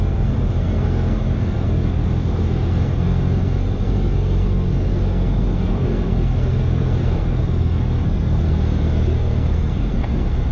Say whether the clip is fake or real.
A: fake